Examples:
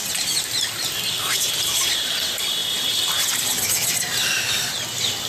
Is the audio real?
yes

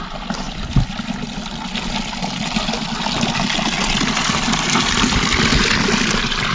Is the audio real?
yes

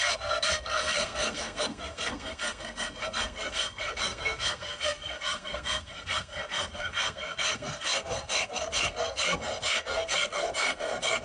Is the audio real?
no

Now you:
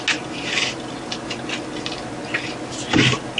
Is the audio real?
yes